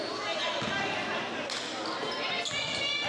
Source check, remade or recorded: recorded